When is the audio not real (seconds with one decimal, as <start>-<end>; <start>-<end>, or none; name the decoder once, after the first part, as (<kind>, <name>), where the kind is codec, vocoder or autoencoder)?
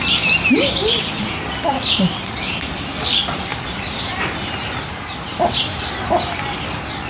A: none